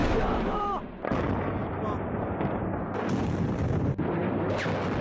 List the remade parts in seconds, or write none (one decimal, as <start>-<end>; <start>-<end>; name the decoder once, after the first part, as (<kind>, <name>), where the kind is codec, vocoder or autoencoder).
0.0-0.9 (vocoder, BigVGAN v2); 1.6-2.6